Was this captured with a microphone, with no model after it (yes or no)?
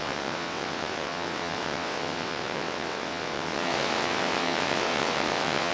no